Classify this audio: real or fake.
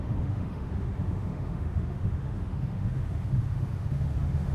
fake